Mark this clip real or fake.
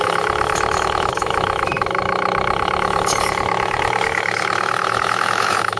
fake